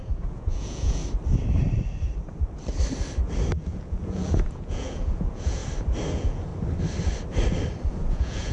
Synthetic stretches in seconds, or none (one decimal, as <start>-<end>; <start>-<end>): 0.0-1.0; 3.6-5.6; 6.1-6.5; 7.9-8.5